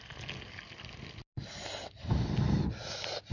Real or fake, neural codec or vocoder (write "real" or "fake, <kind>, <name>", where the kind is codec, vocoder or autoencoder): real